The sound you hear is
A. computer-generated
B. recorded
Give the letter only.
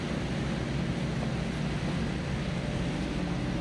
B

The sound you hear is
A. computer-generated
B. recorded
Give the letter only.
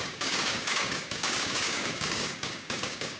A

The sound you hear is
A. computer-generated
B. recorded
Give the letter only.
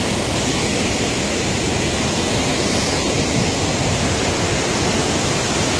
B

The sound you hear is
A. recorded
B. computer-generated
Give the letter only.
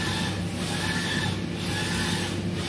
A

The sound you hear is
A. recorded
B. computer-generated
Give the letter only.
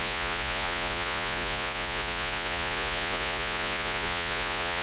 B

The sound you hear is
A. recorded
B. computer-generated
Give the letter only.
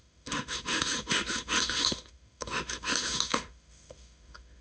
B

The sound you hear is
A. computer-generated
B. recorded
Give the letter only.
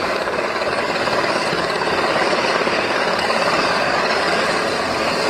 A